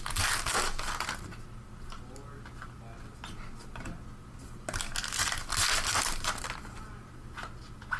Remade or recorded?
recorded